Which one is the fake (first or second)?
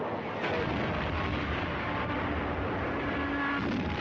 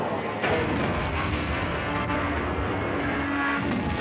second